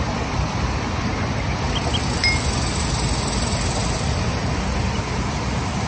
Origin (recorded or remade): recorded